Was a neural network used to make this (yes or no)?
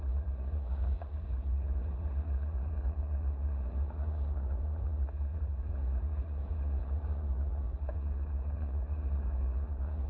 yes